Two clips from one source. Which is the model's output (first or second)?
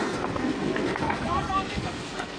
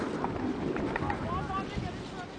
first